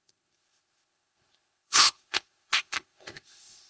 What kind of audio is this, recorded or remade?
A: remade